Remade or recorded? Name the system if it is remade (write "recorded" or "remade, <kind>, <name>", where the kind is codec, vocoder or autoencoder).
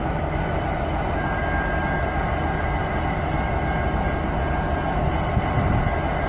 recorded